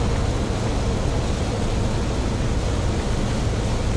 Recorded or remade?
recorded